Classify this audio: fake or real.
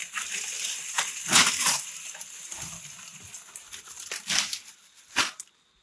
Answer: fake